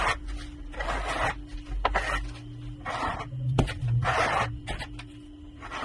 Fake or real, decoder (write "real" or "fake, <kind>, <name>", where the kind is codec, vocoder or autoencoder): real